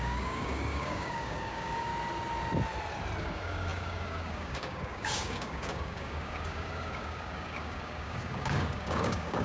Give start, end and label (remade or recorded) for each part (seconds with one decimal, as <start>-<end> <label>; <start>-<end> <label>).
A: 0.0-1.9 remade; 1.9-3.2 recorded; 3.2-9.4 remade